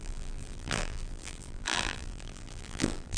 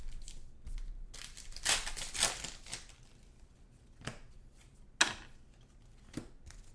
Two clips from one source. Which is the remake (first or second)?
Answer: first